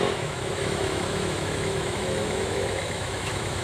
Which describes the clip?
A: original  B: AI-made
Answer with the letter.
B